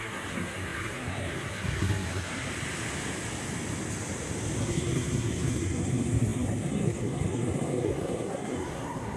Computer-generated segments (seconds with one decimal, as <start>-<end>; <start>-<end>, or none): 0.0-2.5; 4.6-9.2